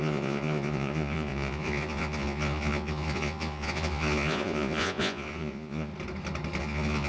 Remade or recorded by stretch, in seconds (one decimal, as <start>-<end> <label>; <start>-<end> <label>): 0.0-5.9 remade; 5.9-6.6 recorded; 6.6-7.1 remade